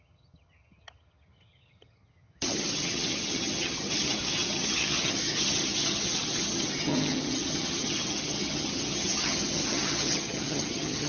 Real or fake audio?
fake